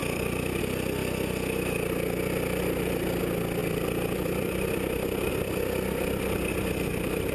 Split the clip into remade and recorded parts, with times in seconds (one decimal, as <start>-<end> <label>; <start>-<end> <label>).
0.0-0.6 remade; 0.6-3.6 recorded; 3.6-5.3 remade; 5.3-7.3 recorded